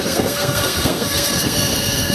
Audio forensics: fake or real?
fake